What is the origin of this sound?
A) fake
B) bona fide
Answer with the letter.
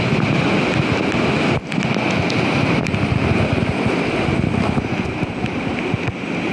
B